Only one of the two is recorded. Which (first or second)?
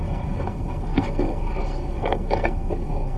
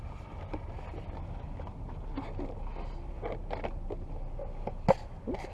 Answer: second